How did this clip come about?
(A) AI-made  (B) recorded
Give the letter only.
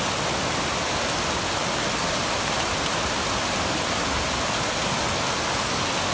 B